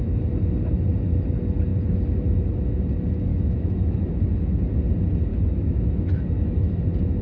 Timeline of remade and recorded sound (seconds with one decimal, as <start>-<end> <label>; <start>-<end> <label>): 0.0-3.3 recorded; 3.3-4.1 remade; 4.1-5.3 recorded; 5.3-6.8 remade; 6.8-7.2 recorded